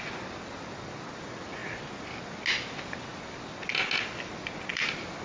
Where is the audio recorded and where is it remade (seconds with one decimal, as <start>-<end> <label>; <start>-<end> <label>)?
0.0-5.2 recorded